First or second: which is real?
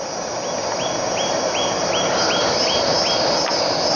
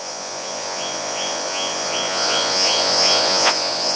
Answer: first